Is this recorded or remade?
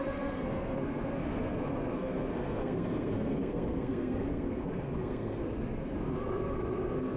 remade